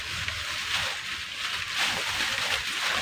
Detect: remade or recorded recorded